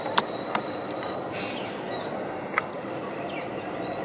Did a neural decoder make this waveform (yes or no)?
yes